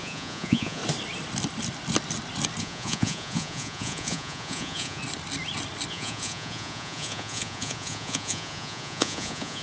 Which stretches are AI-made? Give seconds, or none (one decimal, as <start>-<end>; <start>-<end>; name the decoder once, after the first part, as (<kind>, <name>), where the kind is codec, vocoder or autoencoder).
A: 0.0-0.8 (vocoder, Vocos); 2.6-5.0; 5.9-9.6